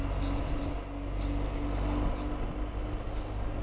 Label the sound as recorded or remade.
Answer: recorded